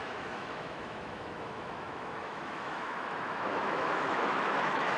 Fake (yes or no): yes